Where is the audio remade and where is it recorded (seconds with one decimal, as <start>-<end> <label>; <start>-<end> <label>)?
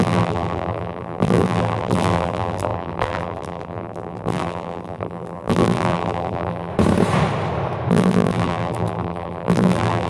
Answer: 0.0-6.7 remade; 6.7-7.9 recorded; 7.9-10.1 remade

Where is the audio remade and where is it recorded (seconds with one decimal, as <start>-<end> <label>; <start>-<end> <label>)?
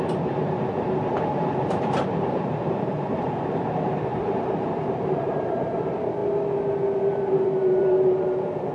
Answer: 0.0-6.2 remade; 6.2-7.0 recorded; 7.0-8.7 remade